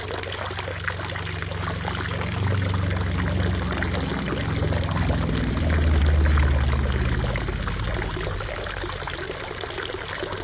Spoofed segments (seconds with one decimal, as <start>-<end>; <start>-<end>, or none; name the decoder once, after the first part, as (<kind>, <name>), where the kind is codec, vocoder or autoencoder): none